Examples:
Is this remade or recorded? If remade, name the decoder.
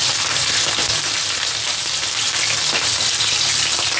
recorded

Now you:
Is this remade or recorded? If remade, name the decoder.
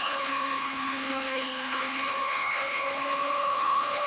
remade, codec, HILCodec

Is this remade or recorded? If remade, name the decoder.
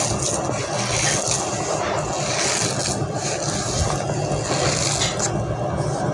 recorded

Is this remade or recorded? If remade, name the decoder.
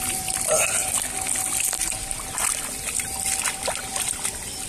recorded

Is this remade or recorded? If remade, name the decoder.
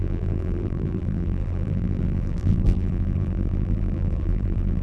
remade, vocoder, BigVGAN v2